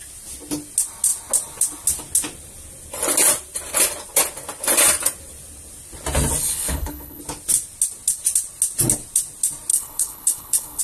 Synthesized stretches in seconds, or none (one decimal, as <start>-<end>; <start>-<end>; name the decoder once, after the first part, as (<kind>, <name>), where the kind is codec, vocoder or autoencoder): 6.4-7.2 (codec, HILCodec); 9.7-10.8